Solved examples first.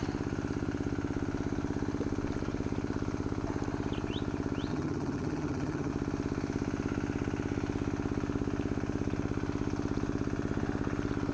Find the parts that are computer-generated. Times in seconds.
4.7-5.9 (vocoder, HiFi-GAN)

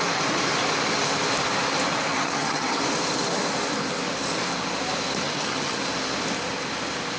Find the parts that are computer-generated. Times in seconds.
2.1-2.8 (vocoder, HiFi-GAN); 5.2-5.8

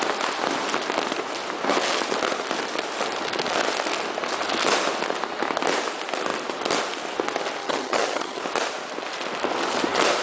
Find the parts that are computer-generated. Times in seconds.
7.6-8.4 (vocoder, HiFi-GAN)

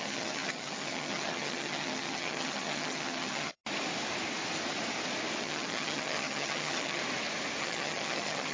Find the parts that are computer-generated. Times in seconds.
0.0-3.6 (vocoder, HiFi-GAN); 5.4-7.0; 7.6-8.5

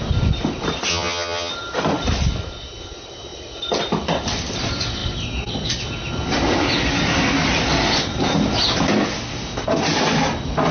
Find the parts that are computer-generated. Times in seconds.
0.9-1.5 (vocoder, HiFi-GAN)

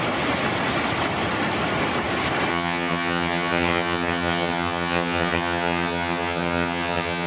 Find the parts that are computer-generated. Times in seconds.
2.5-7.3 (vocoder, HiFi-GAN)